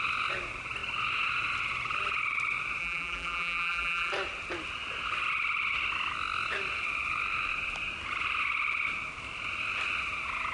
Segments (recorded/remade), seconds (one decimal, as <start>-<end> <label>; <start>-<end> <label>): 0.0-2.8 recorded; 2.8-4.1 remade; 4.1-10.5 recorded